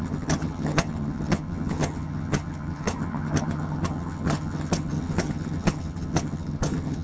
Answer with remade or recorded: remade